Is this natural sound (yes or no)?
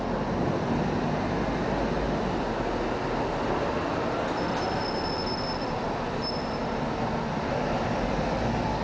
yes